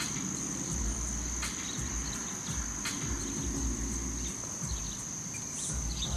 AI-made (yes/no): no